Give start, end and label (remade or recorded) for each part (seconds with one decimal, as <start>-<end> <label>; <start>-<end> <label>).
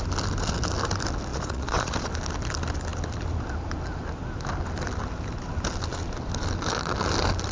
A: 0.0-1.3 recorded; 1.3-2.1 remade; 2.1-7.5 recorded